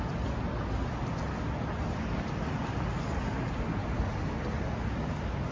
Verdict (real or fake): real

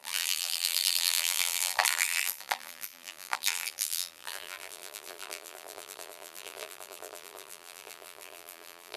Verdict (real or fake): fake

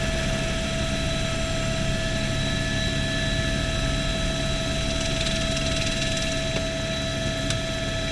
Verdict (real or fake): real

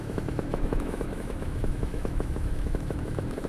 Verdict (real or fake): fake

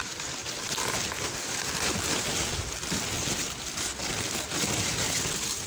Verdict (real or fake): real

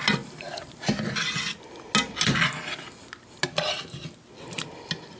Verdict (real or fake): real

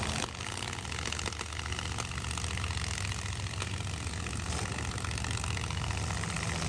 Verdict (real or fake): real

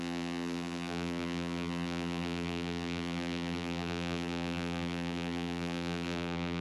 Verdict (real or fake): fake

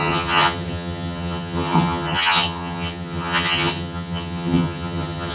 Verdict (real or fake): fake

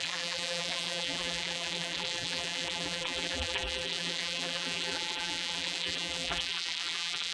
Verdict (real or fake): fake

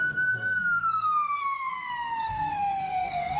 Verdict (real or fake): fake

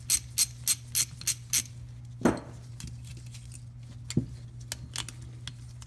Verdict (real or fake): real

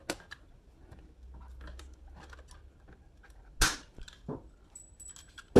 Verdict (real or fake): real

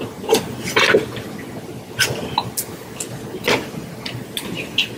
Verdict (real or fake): real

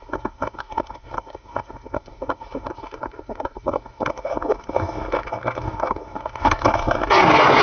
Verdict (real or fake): fake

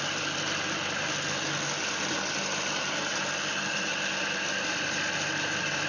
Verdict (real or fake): real